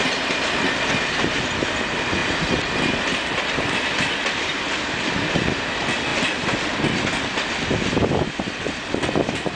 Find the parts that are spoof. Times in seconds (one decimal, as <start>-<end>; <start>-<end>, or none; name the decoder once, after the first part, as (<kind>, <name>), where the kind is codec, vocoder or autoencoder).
none